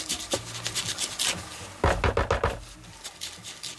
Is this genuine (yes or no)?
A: yes